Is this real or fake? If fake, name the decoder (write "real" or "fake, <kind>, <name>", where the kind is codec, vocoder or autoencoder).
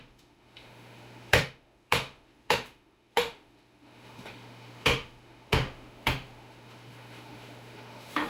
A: fake, autoencoder, DAC-VAE